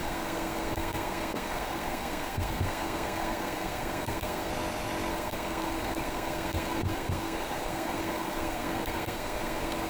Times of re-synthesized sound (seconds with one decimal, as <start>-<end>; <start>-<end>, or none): 0.0-4.5; 5.1-9.9